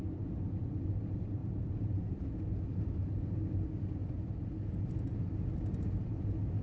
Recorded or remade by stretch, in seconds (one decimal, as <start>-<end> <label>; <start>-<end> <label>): 0.0-4.0 recorded; 4.0-4.5 remade; 4.5-6.6 recorded